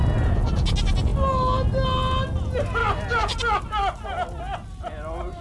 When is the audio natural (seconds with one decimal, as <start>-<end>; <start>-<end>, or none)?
0.0-5.4